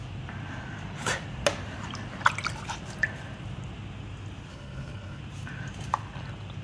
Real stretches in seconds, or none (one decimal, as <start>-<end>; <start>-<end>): 0.0-4.5; 5.2-6.6

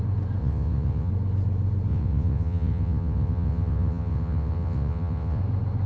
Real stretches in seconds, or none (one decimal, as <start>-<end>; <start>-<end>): 0.0-0.4; 1.1-1.9; 5.4-5.9